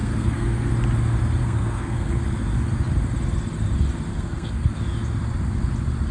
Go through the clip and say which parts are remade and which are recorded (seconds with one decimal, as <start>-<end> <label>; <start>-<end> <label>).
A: 0.0-0.7 remade; 0.7-1.4 recorded; 1.4-2.2 remade; 2.2-4.1 recorded; 4.1-4.8 remade; 4.8-6.1 recorded